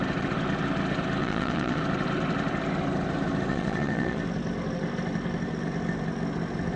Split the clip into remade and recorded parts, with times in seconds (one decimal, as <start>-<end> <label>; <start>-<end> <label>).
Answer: 0.0-1.2 recorded; 1.2-1.8 remade; 1.8-3.5 recorded; 3.5-4.2 remade; 4.2-6.8 recorded